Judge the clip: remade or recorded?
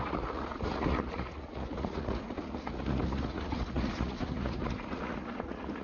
remade